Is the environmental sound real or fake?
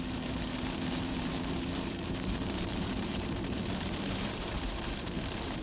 fake